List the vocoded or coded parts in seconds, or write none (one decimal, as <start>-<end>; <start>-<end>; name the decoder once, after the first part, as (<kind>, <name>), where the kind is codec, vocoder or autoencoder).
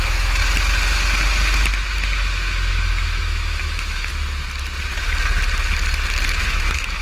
0.0-0.4 (autoencoder, DAC-VAE); 2.7-4.1; 6.4-7.0